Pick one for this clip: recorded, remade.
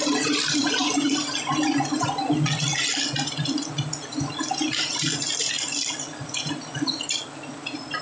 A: recorded